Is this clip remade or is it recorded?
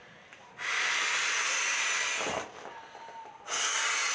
recorded